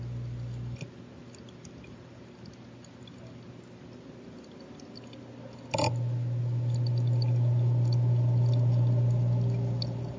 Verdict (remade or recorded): recorded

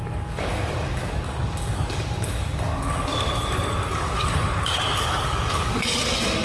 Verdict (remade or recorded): remade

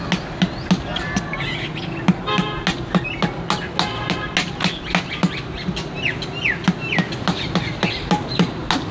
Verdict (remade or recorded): recorded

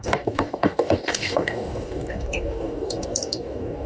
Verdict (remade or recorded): remade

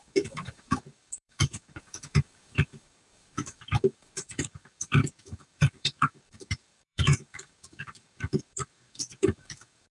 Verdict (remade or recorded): remade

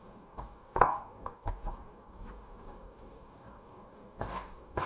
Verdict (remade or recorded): remade